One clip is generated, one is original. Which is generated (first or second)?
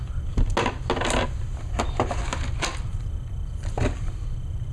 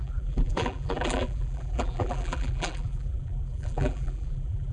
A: second